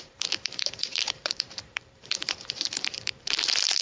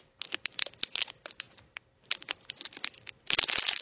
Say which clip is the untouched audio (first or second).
second